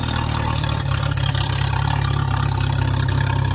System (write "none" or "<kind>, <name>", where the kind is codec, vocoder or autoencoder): vocoder, BigVGAN v2